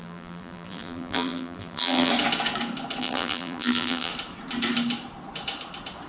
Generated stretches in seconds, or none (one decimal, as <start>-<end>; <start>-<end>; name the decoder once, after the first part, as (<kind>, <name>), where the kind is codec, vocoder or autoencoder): 0.0-2.1 (vocoder, BigVGAN v2); 3.0-4.1